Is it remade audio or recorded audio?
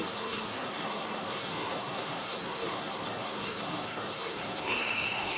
remade